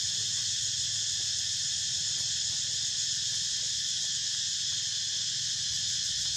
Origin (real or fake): real